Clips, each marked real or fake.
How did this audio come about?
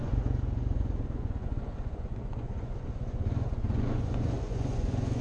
fake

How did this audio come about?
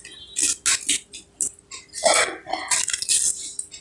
real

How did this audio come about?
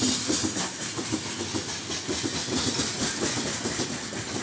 real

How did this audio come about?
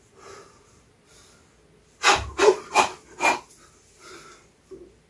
real